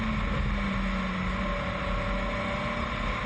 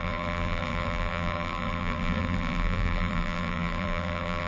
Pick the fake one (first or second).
second